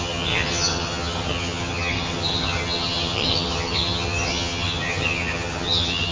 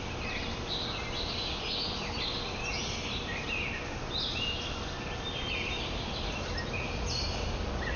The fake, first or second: first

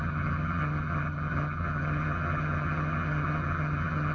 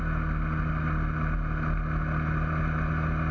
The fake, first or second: first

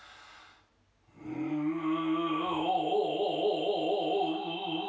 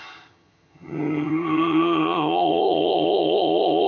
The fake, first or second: second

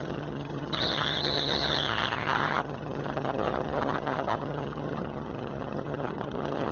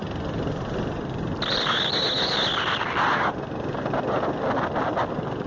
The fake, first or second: first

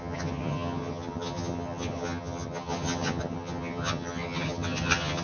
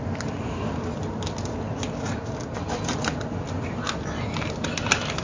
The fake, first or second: first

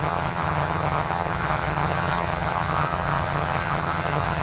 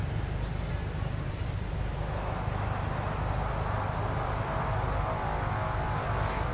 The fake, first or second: first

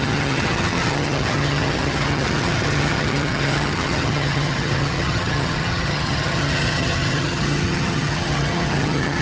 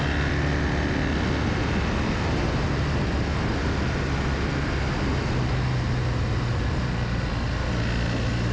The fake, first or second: first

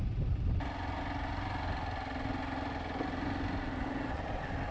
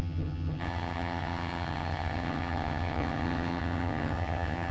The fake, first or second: second